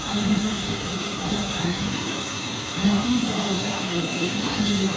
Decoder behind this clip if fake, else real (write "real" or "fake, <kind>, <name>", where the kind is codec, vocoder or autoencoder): fake, codec, SNAC